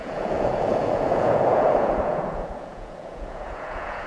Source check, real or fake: fake